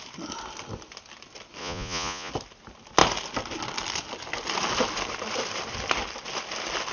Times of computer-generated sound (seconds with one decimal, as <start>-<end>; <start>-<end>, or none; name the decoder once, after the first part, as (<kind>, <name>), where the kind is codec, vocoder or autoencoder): 1.6-2.3 (vocoder, Vocos)